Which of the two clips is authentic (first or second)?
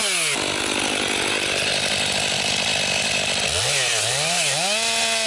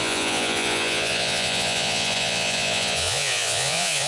first